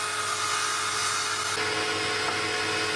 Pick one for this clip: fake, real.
real